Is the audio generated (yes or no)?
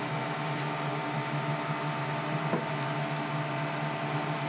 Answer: no